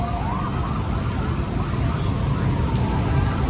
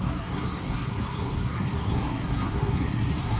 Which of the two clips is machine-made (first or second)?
second